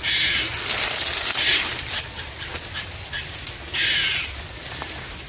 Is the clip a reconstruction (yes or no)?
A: no